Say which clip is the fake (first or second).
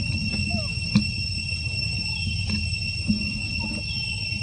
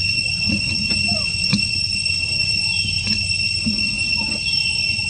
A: second